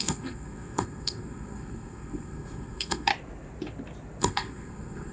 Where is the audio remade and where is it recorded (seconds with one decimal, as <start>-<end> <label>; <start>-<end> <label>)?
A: 0.0-3.1 remade; 3.1-4.2 recorded; 4.2-5.1 remade